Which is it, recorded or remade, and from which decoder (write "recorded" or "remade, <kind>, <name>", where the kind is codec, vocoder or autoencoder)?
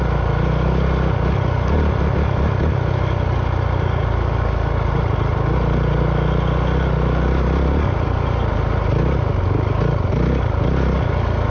recorded